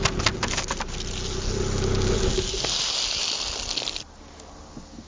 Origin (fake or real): real